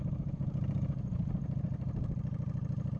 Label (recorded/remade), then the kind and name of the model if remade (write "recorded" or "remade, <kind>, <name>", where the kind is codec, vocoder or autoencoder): recorded